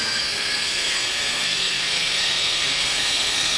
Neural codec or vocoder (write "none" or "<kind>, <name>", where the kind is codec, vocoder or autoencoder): codec, SNAC